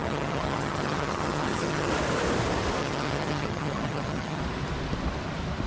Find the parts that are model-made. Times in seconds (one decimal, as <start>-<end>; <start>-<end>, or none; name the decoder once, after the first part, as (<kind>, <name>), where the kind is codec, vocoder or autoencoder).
0.0-1.9 (vocoder, HiFi-GAN); 2.8-4.4